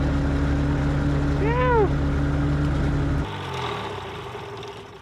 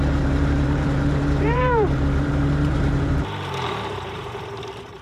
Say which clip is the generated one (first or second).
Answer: second